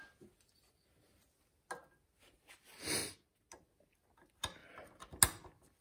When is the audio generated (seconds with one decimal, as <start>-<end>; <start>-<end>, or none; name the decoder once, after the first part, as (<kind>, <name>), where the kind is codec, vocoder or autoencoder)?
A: none